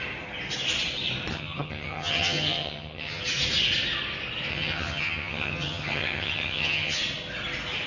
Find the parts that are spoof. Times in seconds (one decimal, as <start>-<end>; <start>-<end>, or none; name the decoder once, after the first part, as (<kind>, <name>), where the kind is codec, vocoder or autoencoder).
1.3-3.2 (vocoder, HiFi-GAN); 4.5-7.0